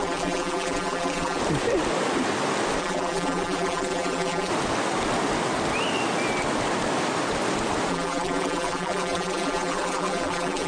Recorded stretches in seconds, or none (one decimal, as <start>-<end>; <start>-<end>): 1.4-2.8; 4.5-7.9